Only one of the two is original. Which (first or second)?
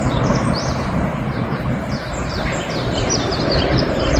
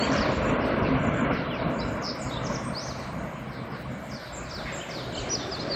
second